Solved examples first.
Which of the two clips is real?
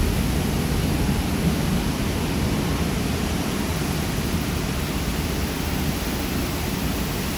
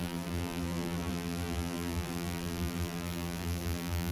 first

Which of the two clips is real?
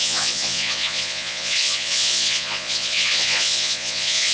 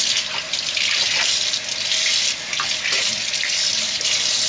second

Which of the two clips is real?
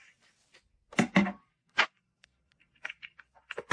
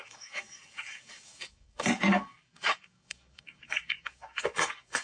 first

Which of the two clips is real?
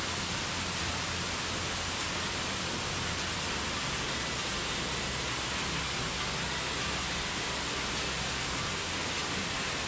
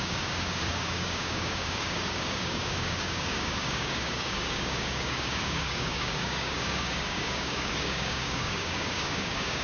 first